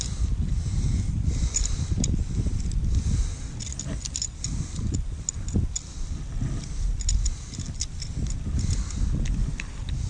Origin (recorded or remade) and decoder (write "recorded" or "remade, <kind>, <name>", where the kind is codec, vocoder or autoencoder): recorded